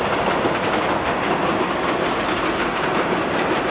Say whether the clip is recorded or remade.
recorded